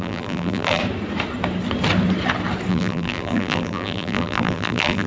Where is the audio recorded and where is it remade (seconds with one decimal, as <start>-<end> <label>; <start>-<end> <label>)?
0.0-0.8 remade; 0.8-2.7 recorded; 2.7-5.1 remade